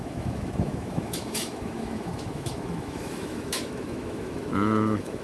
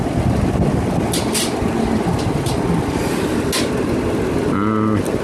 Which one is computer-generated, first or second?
first